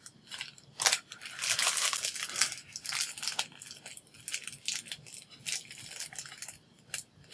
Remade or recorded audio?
recorded